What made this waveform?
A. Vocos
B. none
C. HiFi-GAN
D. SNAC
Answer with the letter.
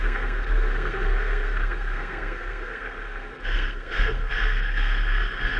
D